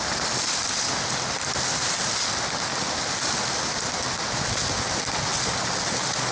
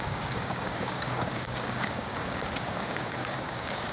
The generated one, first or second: second